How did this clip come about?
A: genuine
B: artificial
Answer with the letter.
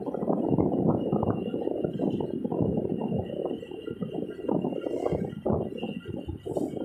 A